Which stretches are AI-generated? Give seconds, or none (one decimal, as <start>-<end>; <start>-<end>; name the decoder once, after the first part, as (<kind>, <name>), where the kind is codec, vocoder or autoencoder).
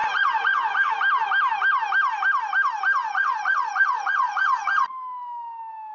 0.0-0.9 (vocoder, Vocos); 3.0-4.9